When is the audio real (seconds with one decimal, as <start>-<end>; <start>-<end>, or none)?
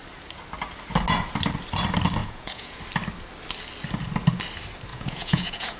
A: 0.0-2.2; 2.8-4.9